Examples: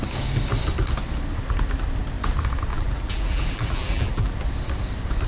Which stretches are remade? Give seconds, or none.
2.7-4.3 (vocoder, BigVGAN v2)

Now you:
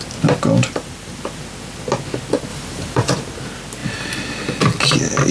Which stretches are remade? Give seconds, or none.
0.6-1.2 (vocoder, BigVGAN v2); 2.5-3.1

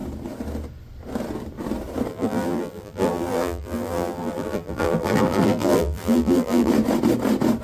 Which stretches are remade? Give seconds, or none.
2.1-6.7 (vocoder, BigVGAN v2)

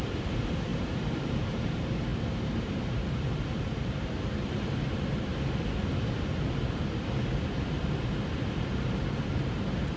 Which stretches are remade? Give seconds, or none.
0.0-5.3 (vocoder, BigVGAN v2); 8.5-10.0

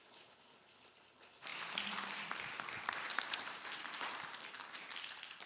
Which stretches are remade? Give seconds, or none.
1.5-4.8 (vocoder, BigVGAN v2)

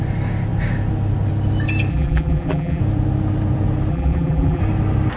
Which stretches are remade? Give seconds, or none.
1.9-2.8 (vocoder, BigVGAN v2); 3.9-4.6

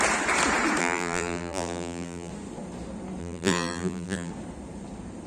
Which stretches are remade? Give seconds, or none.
0.8-2.3 (vocoder, BigVGAN v2); 3.2-4.3